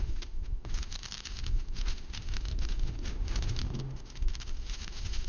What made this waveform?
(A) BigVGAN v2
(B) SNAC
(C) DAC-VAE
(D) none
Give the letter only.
C